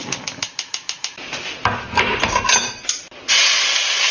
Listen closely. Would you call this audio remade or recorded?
recorded